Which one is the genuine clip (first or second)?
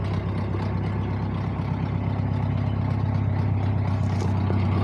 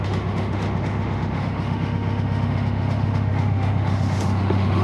first